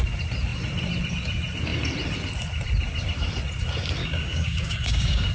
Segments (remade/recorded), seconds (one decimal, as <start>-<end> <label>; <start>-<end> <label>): 0.0-4.0 recorded; 4.0-5.3 remade